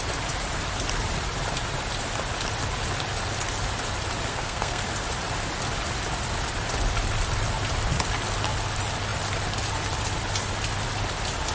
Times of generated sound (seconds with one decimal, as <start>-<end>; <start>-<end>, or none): 4.3-4.8